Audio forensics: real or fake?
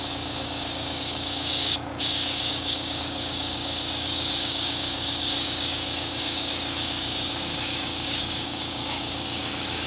fake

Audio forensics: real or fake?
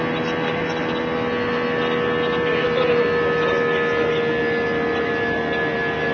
real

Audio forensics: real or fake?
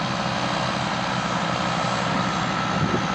real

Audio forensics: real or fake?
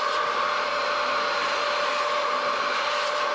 real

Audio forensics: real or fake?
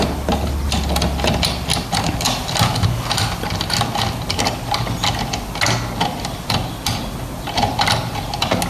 real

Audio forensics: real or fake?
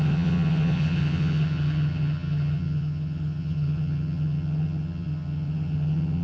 fake